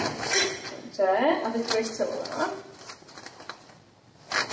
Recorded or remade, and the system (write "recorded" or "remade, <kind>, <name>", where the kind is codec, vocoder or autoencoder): recorded